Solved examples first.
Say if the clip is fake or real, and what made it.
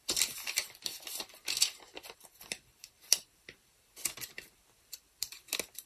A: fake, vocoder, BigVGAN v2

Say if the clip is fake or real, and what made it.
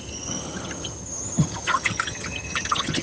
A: fake, vocoder, HiFi-GAN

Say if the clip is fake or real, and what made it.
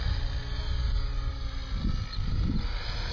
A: real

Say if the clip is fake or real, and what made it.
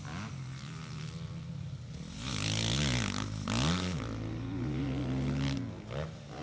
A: real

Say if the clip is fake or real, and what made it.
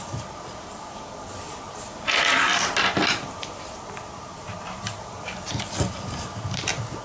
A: real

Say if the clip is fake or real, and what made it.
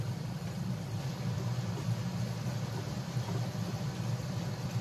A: fake, vocoder, BigVGAN v2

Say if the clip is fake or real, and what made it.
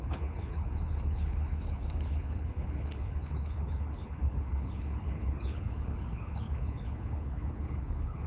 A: fake, codec, HILCodec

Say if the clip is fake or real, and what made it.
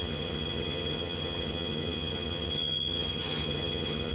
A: fake, vocoder, HiFi-GAN